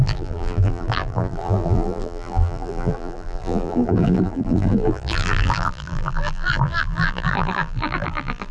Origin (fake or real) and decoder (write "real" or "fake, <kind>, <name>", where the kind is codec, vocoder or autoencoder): fake, vocoder, BigVGAN v2